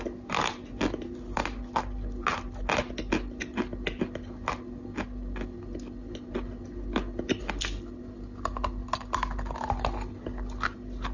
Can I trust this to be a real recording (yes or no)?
yes